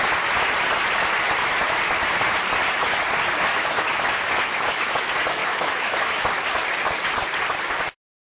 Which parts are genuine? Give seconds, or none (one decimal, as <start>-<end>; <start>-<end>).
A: 0.0-3.5; 4.9-5.4; 6.5-8.3